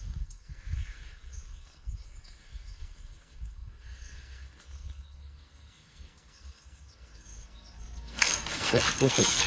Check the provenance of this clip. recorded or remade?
remade